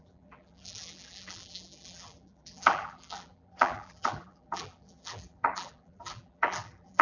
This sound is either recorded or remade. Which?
remade